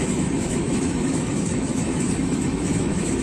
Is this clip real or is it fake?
fake